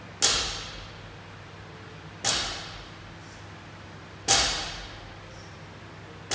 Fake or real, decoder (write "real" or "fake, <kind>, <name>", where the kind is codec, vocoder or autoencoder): real